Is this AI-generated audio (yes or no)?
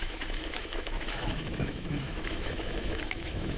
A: yes